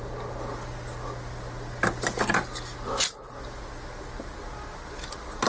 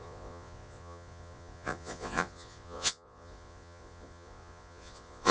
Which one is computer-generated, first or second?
second